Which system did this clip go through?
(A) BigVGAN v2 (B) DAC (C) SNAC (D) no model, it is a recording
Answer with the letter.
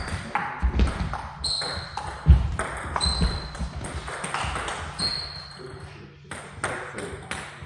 D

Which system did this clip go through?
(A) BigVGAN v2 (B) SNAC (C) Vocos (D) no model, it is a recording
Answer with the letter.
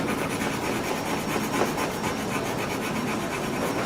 D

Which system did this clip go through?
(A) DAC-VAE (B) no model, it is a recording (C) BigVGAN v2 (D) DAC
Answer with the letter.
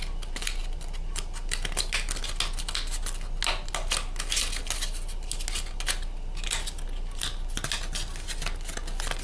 B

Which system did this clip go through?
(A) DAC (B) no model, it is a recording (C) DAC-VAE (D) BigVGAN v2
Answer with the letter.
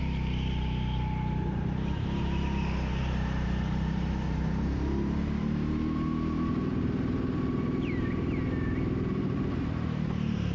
D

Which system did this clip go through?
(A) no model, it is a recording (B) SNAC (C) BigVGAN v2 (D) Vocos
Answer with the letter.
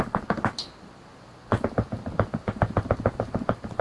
A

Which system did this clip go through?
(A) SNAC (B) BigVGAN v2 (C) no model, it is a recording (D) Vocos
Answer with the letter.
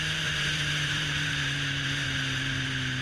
B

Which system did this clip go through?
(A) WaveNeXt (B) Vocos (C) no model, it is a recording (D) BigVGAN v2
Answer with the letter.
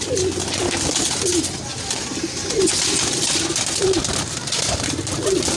D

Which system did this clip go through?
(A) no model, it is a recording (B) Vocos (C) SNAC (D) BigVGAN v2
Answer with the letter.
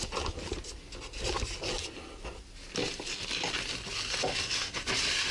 A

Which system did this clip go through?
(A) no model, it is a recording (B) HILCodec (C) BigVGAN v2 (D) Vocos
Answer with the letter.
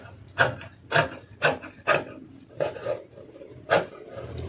C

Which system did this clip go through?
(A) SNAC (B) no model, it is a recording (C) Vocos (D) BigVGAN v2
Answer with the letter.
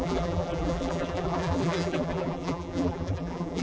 D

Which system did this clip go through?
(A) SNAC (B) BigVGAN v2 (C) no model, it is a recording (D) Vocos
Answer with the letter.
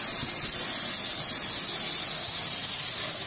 C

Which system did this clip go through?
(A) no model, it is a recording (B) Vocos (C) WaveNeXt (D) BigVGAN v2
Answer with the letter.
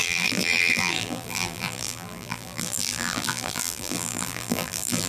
D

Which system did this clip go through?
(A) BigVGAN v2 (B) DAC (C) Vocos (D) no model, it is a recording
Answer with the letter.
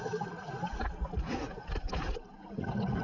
D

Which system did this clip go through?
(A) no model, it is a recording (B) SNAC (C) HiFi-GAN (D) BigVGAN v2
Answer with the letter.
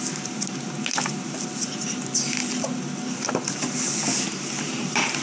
A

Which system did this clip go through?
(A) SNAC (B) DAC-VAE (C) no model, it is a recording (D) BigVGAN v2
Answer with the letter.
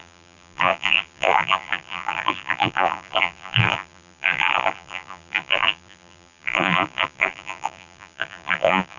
D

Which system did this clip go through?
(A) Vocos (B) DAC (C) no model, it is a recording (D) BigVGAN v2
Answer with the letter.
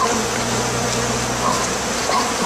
C